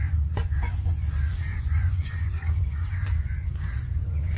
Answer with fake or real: fake